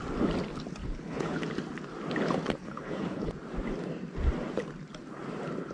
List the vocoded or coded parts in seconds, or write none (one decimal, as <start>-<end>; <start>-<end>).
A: 0.8-1.4; 2.6-3.3